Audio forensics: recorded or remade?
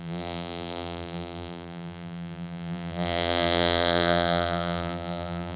remade